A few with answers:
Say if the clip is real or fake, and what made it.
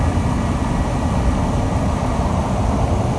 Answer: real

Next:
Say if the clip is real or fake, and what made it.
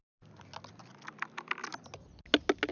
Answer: real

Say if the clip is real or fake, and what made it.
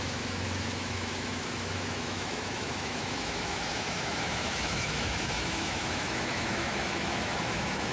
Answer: fake, autoencoder, DAC-VAE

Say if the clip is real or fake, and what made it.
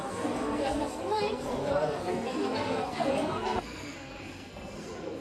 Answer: fake, codec, SNAC